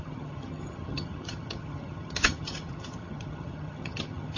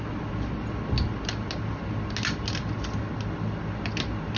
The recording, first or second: second